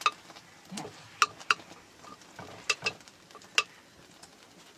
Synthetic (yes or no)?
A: no